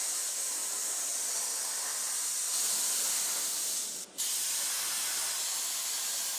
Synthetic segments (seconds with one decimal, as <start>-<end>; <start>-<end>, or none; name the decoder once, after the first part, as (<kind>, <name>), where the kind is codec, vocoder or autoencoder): none